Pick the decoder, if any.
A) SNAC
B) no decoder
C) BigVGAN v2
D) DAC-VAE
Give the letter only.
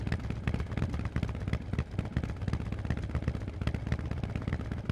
B